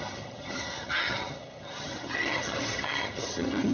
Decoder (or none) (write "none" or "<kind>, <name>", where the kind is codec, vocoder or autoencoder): vocoder, HiFi-GAN